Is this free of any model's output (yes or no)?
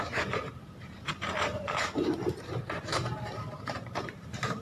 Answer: no